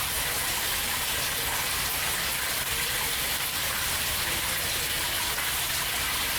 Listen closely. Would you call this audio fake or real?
real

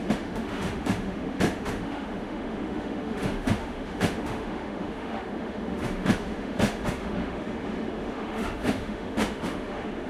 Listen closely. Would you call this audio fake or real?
fake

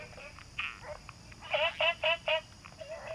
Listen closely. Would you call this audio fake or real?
real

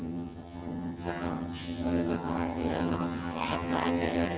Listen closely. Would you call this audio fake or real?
fake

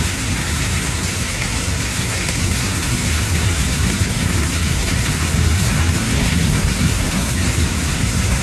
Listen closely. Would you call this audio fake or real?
fake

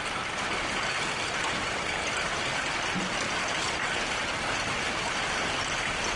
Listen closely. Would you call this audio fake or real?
real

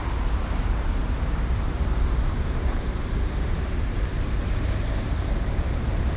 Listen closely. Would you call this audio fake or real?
fake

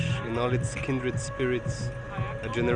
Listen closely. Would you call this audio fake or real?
real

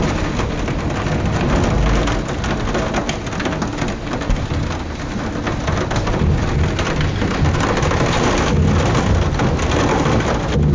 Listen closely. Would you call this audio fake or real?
real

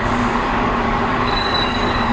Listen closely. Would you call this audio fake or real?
fake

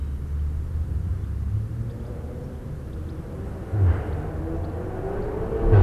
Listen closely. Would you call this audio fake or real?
real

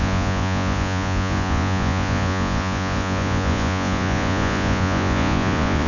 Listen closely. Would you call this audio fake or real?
fake